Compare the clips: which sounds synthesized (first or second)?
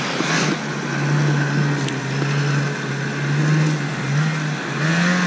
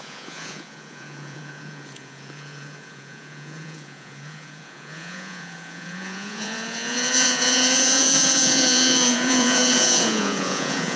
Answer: second